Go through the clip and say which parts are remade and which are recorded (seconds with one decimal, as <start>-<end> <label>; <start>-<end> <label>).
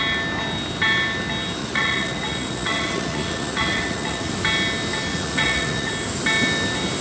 0.0-1.6 recorded; 1.6-4.3 remade; 4.3-5.1 recorded; 5.1-5.9 remade; 5.9-7.0 recorded